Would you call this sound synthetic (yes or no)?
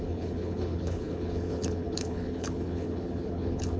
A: yes